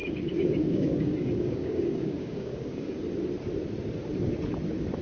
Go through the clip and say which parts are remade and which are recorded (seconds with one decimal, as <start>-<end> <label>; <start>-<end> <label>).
0.0-3.0 remade; 3.0-5.0 recorded